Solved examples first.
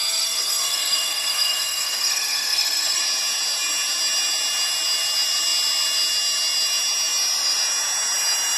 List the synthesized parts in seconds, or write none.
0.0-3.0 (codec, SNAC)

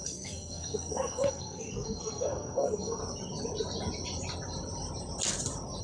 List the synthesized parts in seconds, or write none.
0.0-3.0 (codec, SNAC)

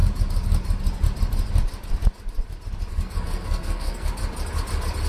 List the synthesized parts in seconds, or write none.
2.9-4.1 (codec, SNAC)

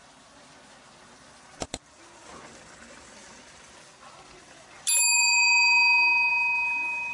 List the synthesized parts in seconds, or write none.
none

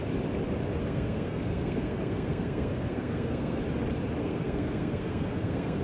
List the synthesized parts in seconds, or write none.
0.8-3.6 (codec, SNAC); 4.2-5.8

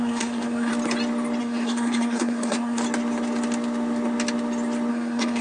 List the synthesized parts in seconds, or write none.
0.0-0.7 (codec, SNAC); 1.4-2.8; 4.9-5.4

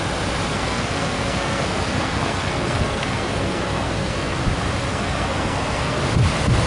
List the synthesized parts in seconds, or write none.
0.5-4.4 (codec, SNAC); 4.9-6.0